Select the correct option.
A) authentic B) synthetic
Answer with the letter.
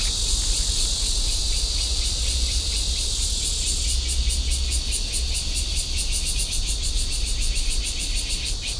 A